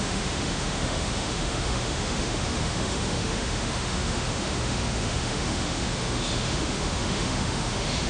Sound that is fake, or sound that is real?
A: fake